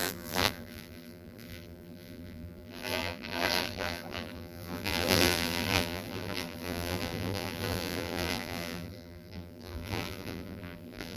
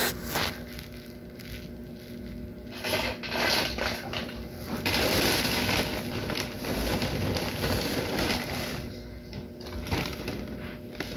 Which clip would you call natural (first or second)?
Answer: second